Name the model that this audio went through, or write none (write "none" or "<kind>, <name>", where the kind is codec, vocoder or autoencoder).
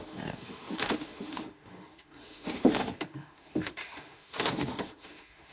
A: autoencoder, DAC-VAE